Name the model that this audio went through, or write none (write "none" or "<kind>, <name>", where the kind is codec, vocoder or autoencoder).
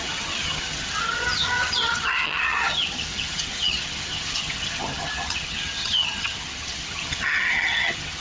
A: vocoder, HiFi-GAN